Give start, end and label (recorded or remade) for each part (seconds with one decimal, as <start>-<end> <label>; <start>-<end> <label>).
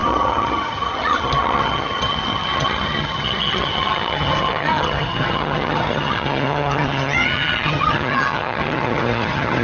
0.0-9.6 remade